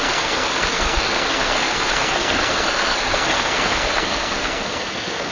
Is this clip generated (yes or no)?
yes